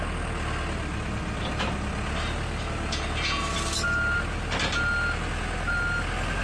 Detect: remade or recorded recorded